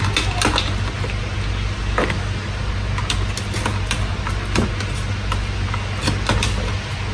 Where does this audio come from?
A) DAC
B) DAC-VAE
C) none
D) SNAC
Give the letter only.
C